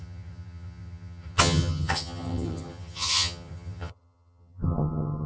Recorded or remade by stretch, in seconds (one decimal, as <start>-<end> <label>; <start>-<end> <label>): 0.0-5.3 remade